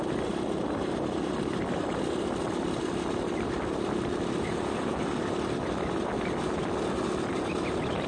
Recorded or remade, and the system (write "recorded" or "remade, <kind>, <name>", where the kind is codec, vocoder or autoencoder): recorded